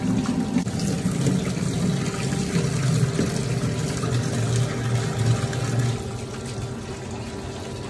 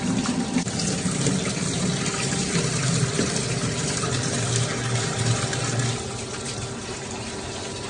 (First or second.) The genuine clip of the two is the first